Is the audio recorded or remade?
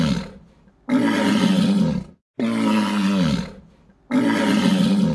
recorded